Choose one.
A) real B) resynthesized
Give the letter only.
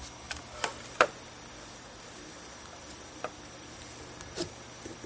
A